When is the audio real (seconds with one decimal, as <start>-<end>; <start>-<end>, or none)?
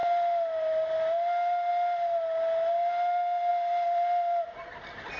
0.0-5.2